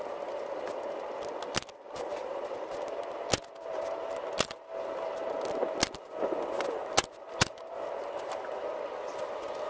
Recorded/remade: recorded